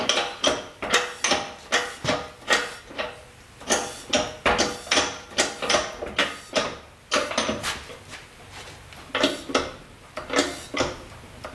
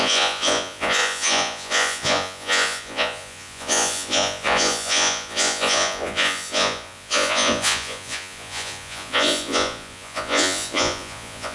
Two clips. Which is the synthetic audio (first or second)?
second